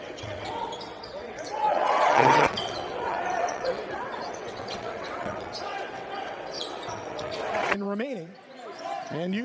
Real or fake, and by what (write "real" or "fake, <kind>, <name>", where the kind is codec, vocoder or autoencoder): fake, vocoder, WaveNeXt